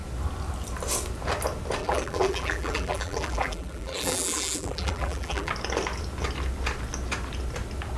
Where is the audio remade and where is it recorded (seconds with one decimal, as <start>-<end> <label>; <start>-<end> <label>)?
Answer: 0.0-1.8 recorded; 1.8-5.5 remade; 5.5-8.0 recorded